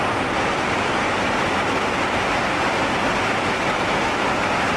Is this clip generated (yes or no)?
no